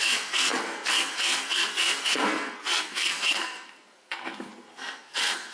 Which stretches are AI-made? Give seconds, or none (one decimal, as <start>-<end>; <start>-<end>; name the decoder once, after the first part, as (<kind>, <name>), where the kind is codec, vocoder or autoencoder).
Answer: 0.0-5.5 (codec, SNAC)